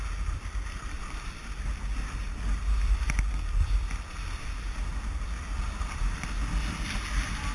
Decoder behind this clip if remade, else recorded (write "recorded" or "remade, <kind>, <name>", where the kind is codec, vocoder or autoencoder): recorded